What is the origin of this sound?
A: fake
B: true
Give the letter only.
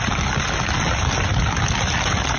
B